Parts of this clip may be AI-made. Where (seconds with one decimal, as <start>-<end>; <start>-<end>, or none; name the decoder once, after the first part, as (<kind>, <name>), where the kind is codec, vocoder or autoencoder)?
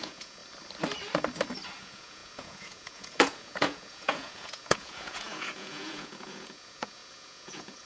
0.0-0.4 (vocoder, Vocos); 1.8-7.9